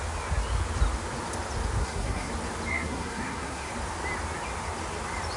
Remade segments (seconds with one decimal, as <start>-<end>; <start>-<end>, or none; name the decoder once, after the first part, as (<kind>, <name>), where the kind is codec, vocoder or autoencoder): 1.8-2.3 (codec, SNAC); 2.7-3.7